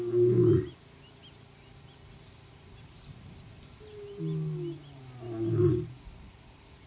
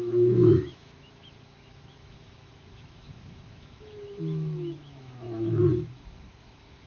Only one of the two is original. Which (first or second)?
first